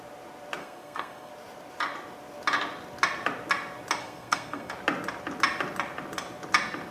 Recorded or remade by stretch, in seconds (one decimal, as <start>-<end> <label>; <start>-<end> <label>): 0.0-0.6 recorded; 0.6-1.3 remade; 1.3-4.0 recorded; 4.0-4.7 remade; 4.7-6.9 recorded